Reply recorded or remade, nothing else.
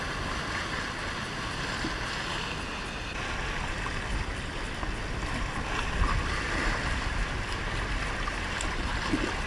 recorded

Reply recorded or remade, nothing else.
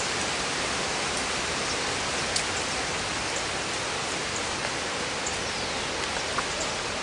recorded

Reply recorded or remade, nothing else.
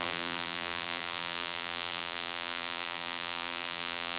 remade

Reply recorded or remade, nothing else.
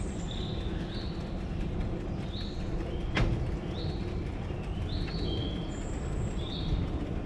recorded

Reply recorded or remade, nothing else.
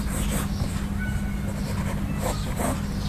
recorded